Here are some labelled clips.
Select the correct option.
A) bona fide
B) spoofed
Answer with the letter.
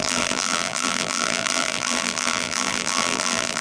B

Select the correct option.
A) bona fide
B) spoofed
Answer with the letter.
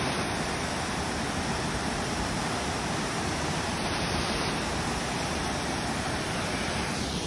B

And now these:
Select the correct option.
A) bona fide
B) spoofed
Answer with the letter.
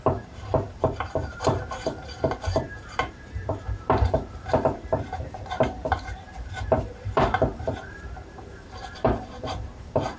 B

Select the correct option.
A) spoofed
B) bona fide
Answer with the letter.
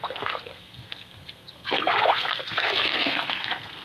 A